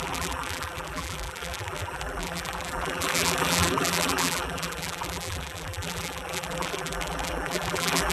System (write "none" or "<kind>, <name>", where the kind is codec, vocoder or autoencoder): vocoder, BigVGAN v2